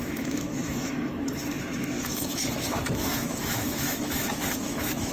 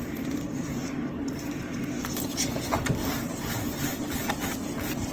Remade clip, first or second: first